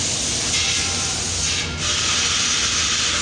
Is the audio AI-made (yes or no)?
no